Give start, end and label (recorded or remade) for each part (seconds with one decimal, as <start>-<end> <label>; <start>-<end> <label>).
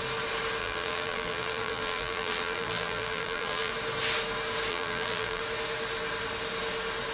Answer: 0.0-0.6 recorded; 0.6-3.7 remade; 3.7-4.7 recorded; 4.7-5.4 remade; 5.4-7.1 recorded